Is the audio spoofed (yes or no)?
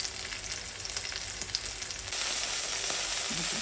no